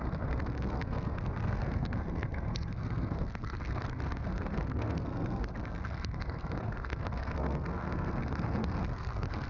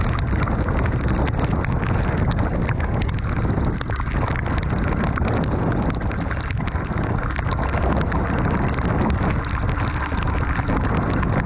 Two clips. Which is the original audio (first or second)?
second